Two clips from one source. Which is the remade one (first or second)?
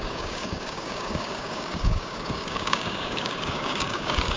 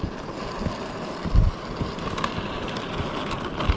first